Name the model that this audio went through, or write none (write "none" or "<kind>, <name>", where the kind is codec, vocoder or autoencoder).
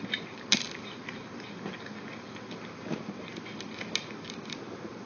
none